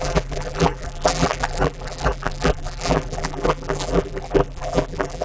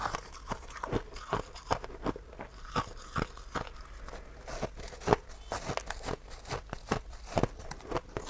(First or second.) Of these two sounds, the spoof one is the first